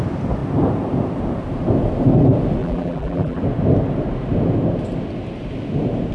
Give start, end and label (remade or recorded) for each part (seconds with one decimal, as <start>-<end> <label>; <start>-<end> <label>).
0.0-2.6 recorded; 2.6-3.4 remade; 3.4-6.1 recorded